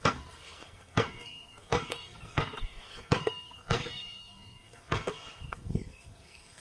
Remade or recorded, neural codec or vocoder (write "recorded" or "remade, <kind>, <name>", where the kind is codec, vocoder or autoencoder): remade, codec, SNAC